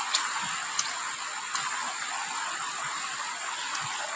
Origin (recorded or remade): recorded